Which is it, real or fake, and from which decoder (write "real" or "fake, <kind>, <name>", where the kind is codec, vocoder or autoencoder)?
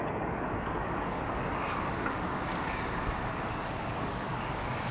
fake, codec, DAC